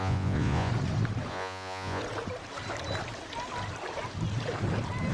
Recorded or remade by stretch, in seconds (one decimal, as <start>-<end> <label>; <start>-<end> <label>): 0.0-0.7 remade; 0.7-1.3 recorded; 1.3-2.0 remade; 2.0-5.1 recorded